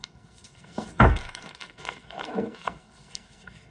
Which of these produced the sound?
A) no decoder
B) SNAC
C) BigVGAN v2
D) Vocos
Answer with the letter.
B